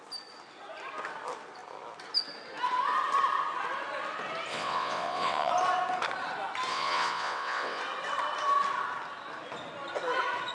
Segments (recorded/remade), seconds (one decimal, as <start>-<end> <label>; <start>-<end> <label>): 0.0-4.5 recorded; 4.5-5.5 remade; 5.5-6.7 recorded; 6.7-7.8 remade; 7.8-10.5 recorded